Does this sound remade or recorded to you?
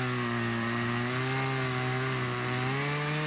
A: recorded